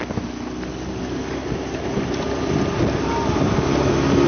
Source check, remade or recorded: recorded